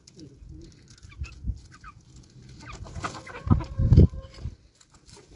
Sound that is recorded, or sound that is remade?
recorded